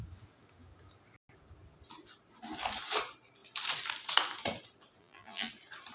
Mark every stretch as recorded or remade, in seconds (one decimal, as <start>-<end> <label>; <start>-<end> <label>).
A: 0.0-5.0 recorded; 5.0-5.5 remade; 5.5-5.9 recorded